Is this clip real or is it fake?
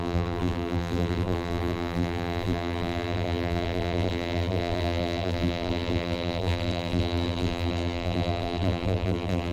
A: fake